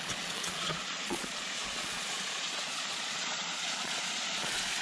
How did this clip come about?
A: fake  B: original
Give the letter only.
A